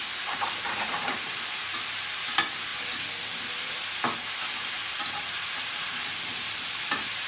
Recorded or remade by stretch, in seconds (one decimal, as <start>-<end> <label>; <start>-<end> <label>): 0.0-2.7 remade; 2.7-5.2 recorded; 5.2-7.3 remade